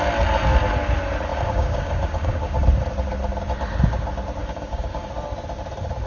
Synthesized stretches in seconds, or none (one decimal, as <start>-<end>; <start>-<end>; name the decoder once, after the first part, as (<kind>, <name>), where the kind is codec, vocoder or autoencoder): 1.3-2.6 (codec, DAC); 4.4-5.1